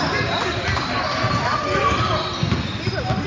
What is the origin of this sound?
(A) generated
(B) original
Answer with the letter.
B